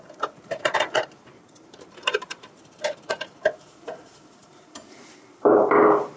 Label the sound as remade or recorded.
remade